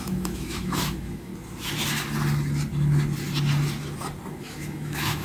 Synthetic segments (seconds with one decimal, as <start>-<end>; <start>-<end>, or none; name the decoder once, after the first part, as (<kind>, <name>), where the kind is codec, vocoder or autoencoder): 0.0-1.3 (autoencoder, DAC-VAE); 4.4-5.2

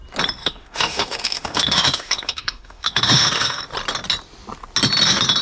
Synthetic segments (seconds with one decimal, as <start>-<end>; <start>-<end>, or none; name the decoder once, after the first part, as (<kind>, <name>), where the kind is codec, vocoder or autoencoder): 0.4-3.6 (autoencoder, DAC-VAE)

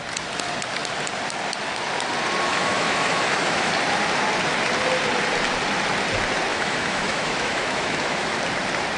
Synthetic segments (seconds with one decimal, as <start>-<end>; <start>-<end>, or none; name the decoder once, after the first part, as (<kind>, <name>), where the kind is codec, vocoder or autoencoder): 2.5-3.7 (autoencoder, DAC-VAE); 6.5-8.4